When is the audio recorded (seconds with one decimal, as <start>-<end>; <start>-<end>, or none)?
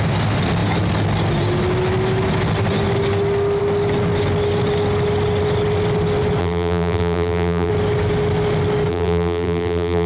0.0-6.4; 7.7-8.9